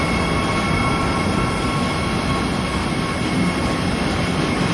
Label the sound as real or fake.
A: real